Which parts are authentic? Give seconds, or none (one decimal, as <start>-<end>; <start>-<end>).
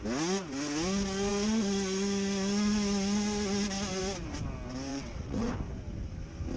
0.0-4.9; 5.5-6.6